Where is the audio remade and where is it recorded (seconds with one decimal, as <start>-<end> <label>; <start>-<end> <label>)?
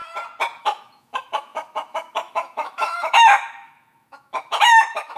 0.0-0.6 recorded; 0.6-5.2 remade